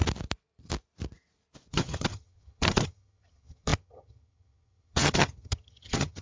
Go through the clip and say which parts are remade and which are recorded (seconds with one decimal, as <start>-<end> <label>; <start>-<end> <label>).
0.0-1.7 recorded; 1.7-6.2 remade